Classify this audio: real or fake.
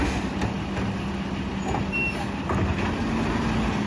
real